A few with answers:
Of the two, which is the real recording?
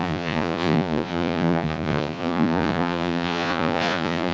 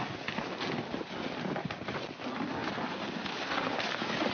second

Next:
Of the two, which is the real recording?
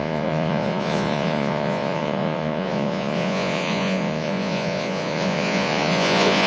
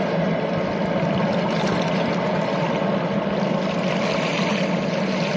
second